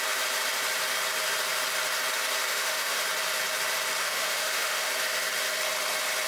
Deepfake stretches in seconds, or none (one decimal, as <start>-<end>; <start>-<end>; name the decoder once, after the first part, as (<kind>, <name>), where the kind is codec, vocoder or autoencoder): 2.5-3.0 (autoencoder, DAC-VAE); 4.0-4.9